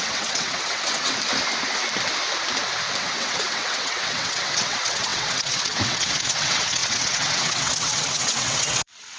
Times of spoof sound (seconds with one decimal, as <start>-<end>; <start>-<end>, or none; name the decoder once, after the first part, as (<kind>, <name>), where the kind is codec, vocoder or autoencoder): 0.0-1.1 (vocoder, WaveNeXt); 3.0-9.2